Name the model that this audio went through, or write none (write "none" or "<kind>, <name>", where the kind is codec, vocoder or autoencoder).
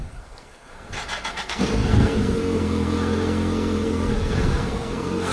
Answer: codec, SNAC